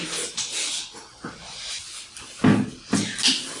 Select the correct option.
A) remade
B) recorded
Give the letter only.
B